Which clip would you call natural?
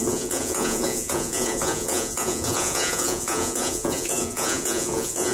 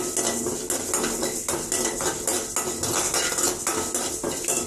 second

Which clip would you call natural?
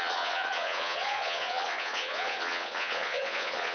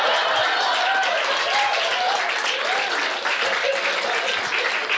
second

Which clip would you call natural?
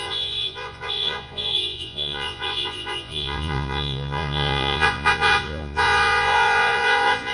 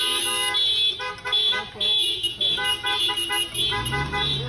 second